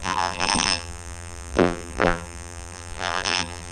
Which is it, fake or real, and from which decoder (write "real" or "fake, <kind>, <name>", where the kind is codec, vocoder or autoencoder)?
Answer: fake, vocoder, BigVGAN v2